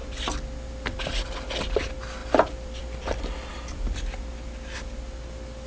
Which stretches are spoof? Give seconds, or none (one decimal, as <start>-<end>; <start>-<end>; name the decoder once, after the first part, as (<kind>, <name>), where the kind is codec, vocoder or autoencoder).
2.2-4.0 (vocoder, BigVGAN v2)